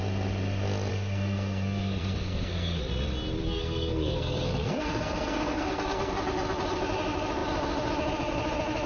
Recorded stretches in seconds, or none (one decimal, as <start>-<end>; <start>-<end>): 0.0-0.9; 2.8-3.4; 6.1-8.9